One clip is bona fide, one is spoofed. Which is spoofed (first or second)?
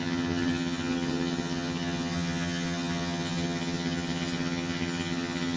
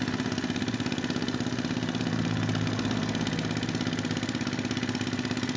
first